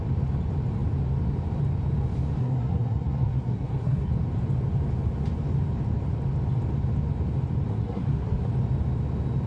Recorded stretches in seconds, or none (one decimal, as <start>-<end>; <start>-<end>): 0.0-2.4; 4.1-7.7; 8.5-9.5